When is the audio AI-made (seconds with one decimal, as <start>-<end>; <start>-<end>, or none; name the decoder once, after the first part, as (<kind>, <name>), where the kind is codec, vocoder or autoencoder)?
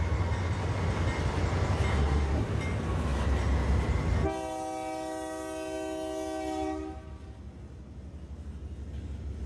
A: 1.9-2.5 (codec, SNAC)